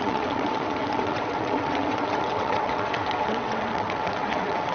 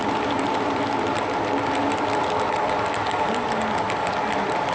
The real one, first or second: second